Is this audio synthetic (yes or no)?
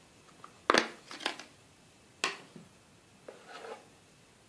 no